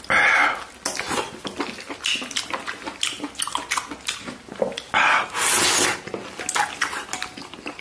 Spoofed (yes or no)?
no